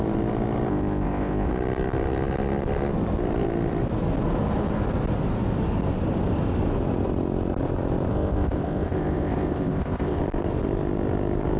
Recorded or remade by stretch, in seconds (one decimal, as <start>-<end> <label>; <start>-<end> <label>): 0.0-0.7 recorded; 0.7-1.5 remade; 1.5-8.1 recorded; 8.1-10.2 remade; 10.2-11.6 recorded